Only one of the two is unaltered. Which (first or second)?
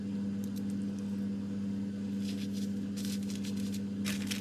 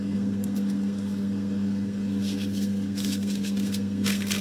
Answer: first